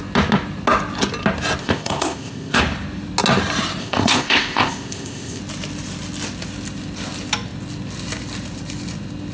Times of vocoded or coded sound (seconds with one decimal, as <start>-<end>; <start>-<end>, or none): 1.6-2.6; 3.8-5.4